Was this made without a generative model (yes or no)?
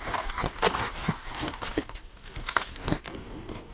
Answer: no